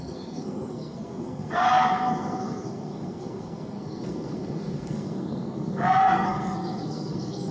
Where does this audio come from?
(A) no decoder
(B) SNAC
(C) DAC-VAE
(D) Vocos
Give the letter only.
B